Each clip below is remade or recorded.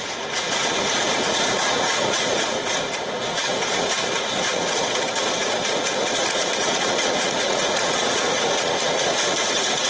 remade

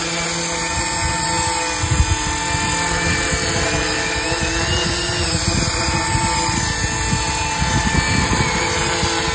recorded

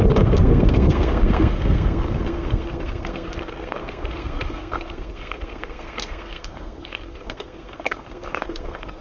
remade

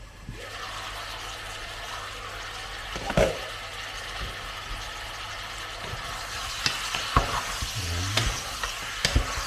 recorded